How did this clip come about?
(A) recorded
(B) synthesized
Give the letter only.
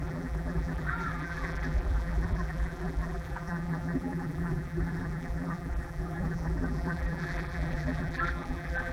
B